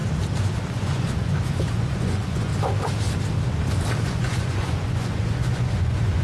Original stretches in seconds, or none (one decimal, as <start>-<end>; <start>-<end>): 0.0-0.7; 2.5-4.0